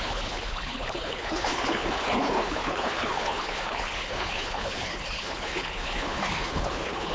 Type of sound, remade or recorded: remade